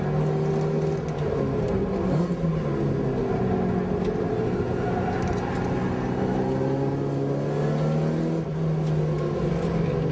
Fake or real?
real